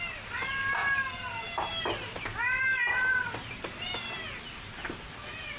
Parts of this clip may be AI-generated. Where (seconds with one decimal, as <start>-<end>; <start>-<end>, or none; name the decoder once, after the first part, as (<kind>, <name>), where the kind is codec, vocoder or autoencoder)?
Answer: 0.8-1.7 (vocoder, BigVGAN v2); 2.7-4.4